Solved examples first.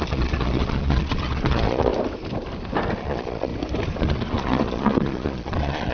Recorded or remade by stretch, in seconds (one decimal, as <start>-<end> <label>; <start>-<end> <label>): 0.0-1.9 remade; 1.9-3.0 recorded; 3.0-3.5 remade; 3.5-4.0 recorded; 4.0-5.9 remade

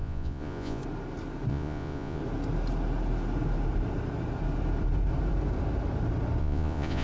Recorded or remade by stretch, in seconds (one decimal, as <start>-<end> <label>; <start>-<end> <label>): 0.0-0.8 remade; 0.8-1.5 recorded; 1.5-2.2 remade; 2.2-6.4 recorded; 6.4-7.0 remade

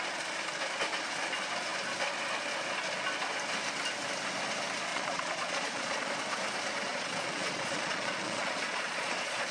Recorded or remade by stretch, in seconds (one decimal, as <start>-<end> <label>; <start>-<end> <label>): 0.0-4.9 recorded; 4.9-6.1 remade; 6.1-6.9 recorded; 6.9-9.5 remade

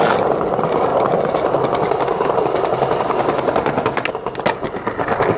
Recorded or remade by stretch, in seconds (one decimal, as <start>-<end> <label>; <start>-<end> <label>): 0.0-5.4 recorded

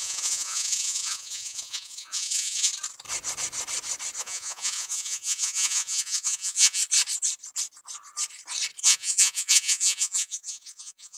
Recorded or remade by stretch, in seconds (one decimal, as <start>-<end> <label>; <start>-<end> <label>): 0.0-2.7 remade; 2.7-4.2 recorded; 4.2-6.8 remade; 6.8-8.8 recorded; 8.8-11.2 remade

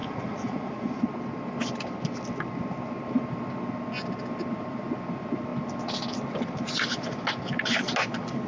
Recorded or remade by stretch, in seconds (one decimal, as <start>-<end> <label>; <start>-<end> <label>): 0.0-1.0 remade; 1.0-8.5 recorded